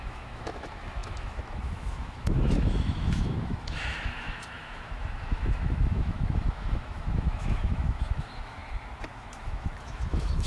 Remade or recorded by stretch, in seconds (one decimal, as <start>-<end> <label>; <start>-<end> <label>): 0.0-8.6 remade; 8.6-9.1 recorded; 9.1-10.5 remade